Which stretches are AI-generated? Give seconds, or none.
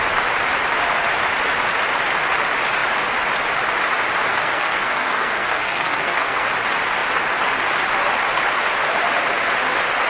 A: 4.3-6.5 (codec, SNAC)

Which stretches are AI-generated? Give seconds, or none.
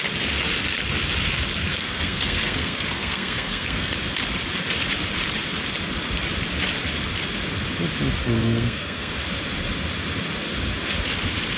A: 1.7-3.9 (codec, SNAC); 8.2-9.1